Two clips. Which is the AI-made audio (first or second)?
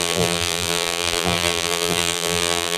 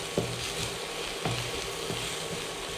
first